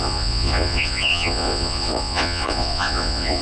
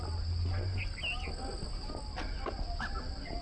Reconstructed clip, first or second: first